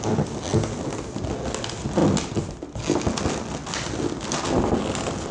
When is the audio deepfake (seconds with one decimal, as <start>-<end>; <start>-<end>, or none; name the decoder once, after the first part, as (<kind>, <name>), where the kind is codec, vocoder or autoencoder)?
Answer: none